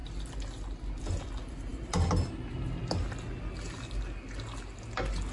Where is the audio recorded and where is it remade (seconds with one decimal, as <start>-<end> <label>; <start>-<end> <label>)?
0.0-5.3 recorded

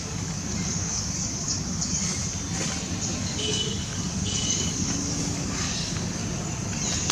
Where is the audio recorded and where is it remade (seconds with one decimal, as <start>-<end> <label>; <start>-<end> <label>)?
0.0-2.2 remade; 2.2-3.2 recorded; 3.2-6.2 remade; 6.2-7.1 recorded

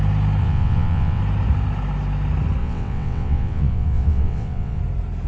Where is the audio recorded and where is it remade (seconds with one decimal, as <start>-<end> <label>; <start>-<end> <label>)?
0.0-0.4 recorded; 0.4-1.2 remade; 1.2-2.6 recorded; 2.6-4.8 remade; 4.8-5.3 recorded